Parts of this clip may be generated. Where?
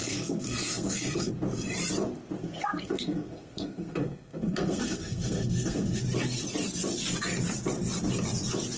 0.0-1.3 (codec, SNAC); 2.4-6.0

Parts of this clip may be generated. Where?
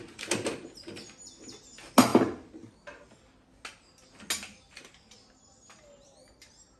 none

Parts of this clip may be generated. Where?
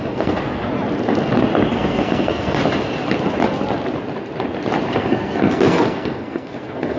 0.0-0.7 (codec, SNAC); 1.7-2.6; 4.9-7.0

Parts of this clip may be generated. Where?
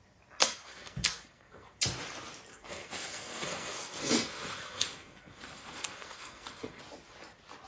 0.4-1.8 (codec, SNAC); 2.5-6.8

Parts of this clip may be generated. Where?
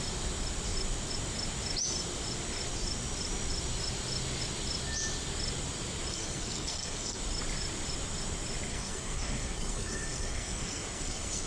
6.1-7.2 (codec, SNAC); 8.7-11.5